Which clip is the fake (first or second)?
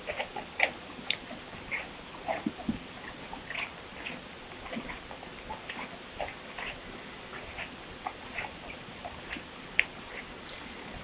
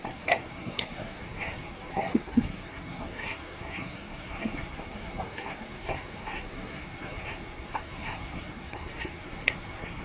second